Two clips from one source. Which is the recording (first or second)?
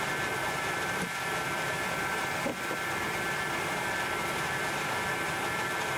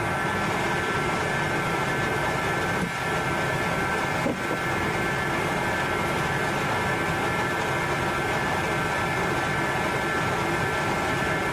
second